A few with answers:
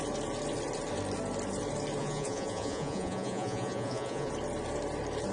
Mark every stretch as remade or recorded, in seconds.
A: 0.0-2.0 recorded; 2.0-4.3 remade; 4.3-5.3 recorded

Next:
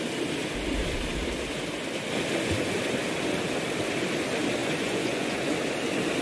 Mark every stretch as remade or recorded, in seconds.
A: 0.0-4.6 recorded; 4.6-5.5 remade; 5.5-6.2 recorded

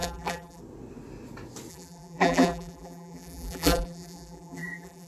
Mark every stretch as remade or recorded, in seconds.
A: 0.0-0.6 remade; 0.6-1.7 recorded; 1.7-5.1 remade

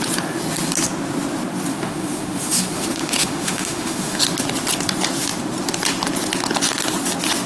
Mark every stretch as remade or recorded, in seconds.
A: 0.0-1.7 recorded; 1.7-4.2 remade; 4.2-7.5 recorded

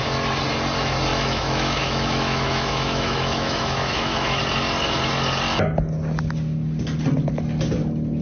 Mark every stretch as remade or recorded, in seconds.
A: 0.0-1.1 recorded; 1.1-4.4 remade; 4.4-8.2 recorded

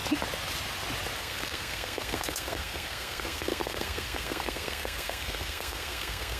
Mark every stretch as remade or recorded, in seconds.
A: 0.0-1.2 recorded; 1.2-6.4 remade

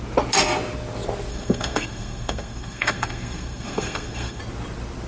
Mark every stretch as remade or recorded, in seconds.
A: 0.0-1.3 recorded; 1.3-4.4 remade; 4.4-5.1 recorded

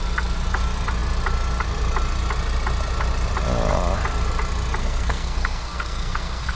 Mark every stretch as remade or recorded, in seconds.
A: 0.0-4.8 recorded; 4.8-6.6 remade